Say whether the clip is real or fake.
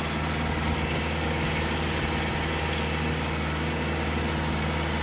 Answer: real